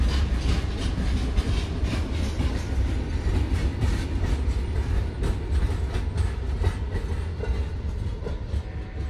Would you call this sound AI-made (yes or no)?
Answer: no